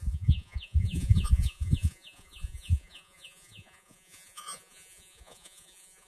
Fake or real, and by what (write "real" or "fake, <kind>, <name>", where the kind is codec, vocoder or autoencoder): fake, vocoder, Vocos